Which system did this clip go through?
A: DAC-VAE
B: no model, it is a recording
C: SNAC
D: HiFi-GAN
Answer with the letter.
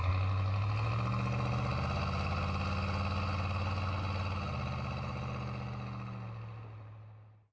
B